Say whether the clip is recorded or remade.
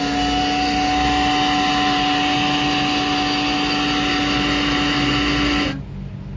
recorded